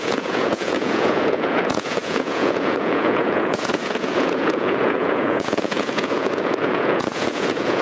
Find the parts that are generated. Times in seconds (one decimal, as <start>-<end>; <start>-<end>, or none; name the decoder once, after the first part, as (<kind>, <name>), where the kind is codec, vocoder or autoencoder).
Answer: 0.0-7.8 (vocoder, Vocos)

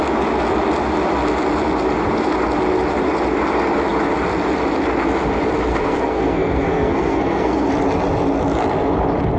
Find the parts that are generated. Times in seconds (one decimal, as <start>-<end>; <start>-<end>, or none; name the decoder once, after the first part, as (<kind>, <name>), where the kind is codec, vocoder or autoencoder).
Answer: 5.7-7.7 (codec, SNAC)

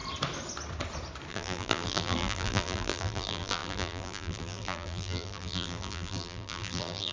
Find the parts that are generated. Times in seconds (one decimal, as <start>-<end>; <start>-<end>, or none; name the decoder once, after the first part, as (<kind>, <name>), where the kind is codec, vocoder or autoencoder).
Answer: 1.3-7.1 (vocoder, BigVGAN v2)

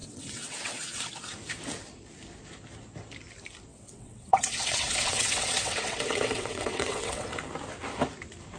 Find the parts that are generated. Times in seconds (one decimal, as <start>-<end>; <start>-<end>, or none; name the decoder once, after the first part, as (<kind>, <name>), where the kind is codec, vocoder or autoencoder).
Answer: 0.0-1.0 (vocoder, WaveNeXt); 3.7-7.3

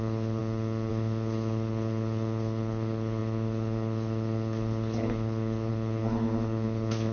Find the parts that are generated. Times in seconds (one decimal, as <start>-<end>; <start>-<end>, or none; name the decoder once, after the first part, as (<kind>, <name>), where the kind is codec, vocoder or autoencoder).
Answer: 0.0-0.4 (codec, HILCodec); 0.9-7.1

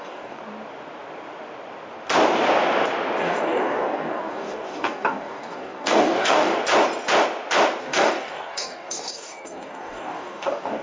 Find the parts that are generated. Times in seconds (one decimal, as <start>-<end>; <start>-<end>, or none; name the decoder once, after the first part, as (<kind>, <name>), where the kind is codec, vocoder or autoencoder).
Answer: 0.0-0.4 (codec, DAC); 3.2-6.5; 7.8-10.8

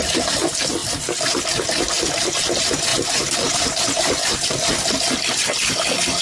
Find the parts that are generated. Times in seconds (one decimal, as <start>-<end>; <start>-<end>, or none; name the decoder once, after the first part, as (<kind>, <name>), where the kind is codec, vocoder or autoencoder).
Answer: 2.9-4.5 (vocoder, BigVGAN v2)